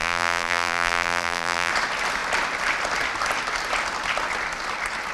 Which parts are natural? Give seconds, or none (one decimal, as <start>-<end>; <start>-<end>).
1.7-5.1